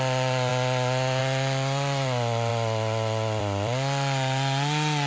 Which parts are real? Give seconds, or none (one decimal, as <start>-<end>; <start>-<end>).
0.5-1.2; 2.5-3.4